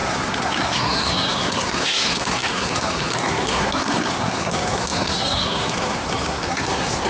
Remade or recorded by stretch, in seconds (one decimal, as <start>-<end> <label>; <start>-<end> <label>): 0.0-7.1 remade